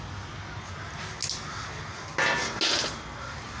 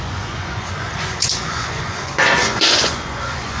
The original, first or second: first